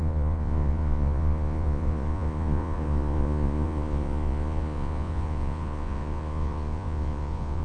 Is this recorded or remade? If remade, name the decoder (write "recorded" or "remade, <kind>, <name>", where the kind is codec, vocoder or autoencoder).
remade, vocoder, Vocos